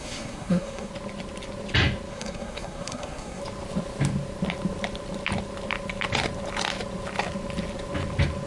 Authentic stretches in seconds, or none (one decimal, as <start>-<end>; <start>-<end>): 0.9-2.1; 3.4-8.5